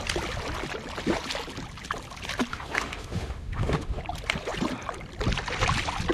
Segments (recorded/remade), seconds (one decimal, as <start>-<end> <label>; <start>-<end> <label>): 0.0-2.5 recorded; 2.5-4.0 remade; 4.0-6.1 recorded